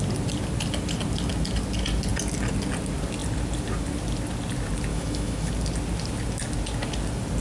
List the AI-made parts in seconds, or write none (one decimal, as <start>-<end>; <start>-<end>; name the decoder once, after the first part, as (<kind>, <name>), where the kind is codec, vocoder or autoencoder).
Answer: 4.9-5.5 (autoencoder, DAC-VAE)